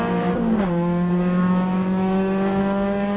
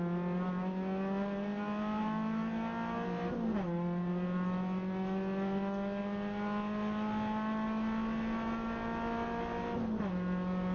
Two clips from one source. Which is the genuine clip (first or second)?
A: second